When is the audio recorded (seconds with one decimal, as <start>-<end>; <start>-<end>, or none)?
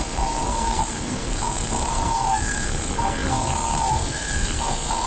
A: none